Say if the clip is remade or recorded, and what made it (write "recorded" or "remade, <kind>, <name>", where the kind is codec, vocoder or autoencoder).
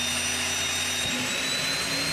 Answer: recorded